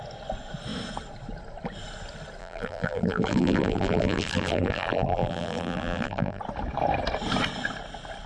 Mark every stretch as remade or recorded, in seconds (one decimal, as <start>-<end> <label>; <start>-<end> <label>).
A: 0.0-2.4 recorded; 2.4-6.4 remade; 6.4-8.3 recorded